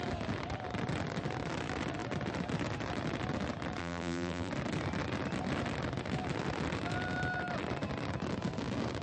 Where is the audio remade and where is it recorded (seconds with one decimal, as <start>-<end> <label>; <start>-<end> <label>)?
0.0-3.8 recorded; 3.8-4.5 remade; 4.5-9.0 recorded